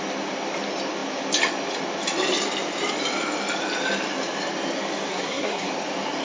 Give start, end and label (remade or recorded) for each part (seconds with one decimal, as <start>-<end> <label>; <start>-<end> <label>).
0.0-5.1 recorded; 5.1-5.7 remade; 5.7-6.2 recorded